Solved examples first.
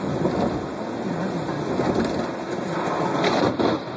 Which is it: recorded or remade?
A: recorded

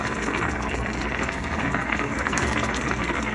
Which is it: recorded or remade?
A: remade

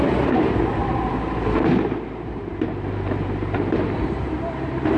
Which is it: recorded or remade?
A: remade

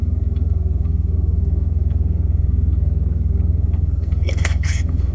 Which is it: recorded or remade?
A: remade